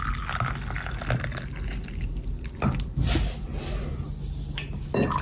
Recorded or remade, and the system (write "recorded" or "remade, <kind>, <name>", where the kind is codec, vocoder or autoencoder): recorded